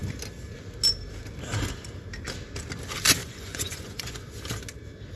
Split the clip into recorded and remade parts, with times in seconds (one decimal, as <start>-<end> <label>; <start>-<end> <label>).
0.0-3.2 recorded; 3.2-4.2 remade; 4.2-5.2 recorded